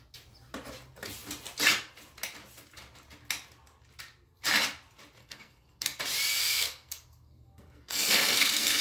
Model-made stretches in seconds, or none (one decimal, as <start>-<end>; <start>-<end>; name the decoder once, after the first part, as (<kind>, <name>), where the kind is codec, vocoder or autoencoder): 5.2-6.0 (codec, SNAC); 6.4-8.8